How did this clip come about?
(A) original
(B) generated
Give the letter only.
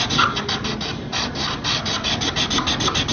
A